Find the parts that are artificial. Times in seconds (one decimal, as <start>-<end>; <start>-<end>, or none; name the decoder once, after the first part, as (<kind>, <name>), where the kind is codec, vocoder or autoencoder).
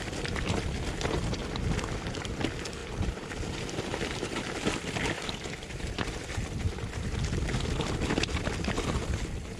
1.4-2.2 (vocoder, BigVGAN v2); 2.8-7.9